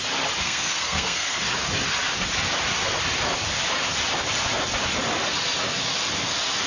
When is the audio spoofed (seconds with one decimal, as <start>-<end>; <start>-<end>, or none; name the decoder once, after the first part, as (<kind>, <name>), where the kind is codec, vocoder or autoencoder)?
0.4-1.4 (codec, SNAC)